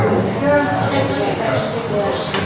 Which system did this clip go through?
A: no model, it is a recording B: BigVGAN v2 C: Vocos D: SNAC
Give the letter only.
A